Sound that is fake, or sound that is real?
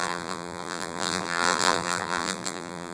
fake